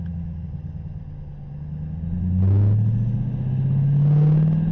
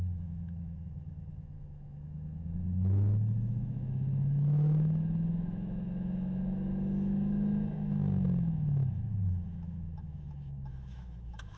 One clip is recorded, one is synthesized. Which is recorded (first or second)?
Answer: first